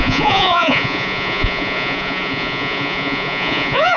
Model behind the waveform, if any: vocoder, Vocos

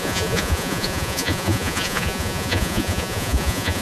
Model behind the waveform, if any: vocoder, Vocos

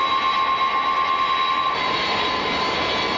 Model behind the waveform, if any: none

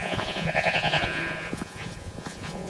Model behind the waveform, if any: vocoder, Vocos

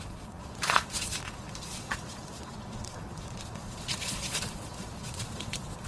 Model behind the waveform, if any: vocoder, Vocos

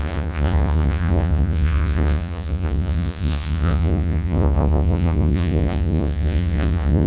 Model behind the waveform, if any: vocoder, Vocos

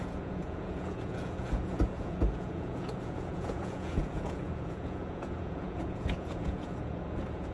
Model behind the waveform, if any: vocoder, Vocos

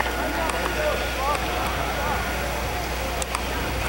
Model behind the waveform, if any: none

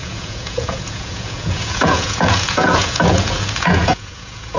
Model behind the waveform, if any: vocoder, Vocos